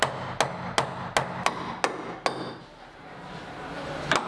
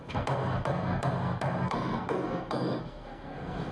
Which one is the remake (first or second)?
second